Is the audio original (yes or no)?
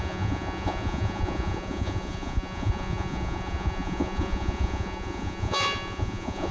no